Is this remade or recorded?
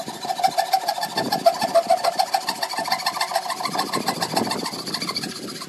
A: recorded